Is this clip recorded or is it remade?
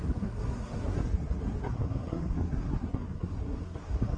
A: remade